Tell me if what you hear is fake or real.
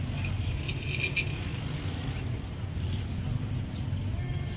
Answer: real